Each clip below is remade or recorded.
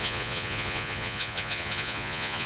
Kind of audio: remade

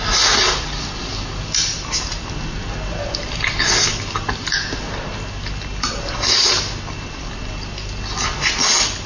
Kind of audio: recorded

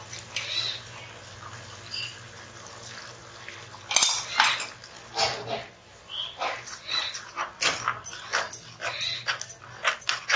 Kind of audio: recorded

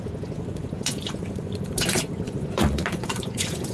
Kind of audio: remade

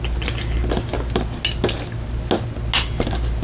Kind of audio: recorded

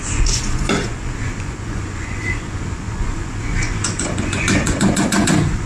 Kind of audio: remade